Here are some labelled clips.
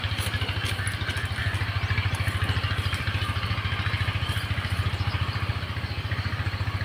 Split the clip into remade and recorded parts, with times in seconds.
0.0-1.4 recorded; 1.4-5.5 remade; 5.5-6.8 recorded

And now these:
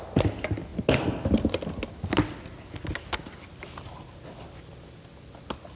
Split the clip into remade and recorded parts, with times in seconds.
0.0-5.8 recorded